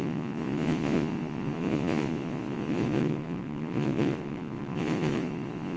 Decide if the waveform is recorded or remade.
remade